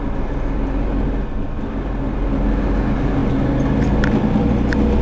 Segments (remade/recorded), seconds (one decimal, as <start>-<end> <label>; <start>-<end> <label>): 0.0-5.0 recorded